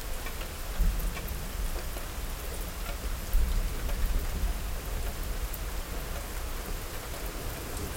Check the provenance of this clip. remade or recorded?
recorded